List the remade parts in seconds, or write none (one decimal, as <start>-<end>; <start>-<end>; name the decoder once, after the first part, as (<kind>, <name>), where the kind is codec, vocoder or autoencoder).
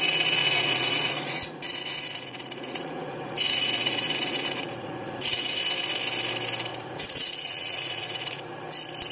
0.4-5.6 (vocoder, Vocos); 6.7-8.4